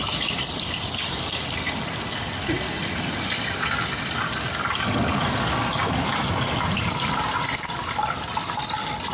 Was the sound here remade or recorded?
recorded